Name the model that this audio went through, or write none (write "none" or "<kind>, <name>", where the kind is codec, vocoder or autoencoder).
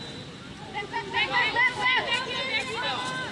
none